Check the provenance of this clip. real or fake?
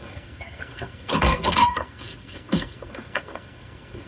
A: fake